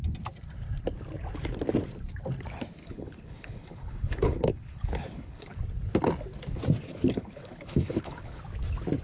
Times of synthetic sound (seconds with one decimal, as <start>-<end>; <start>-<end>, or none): 2.8-5.6; 6.9-8.4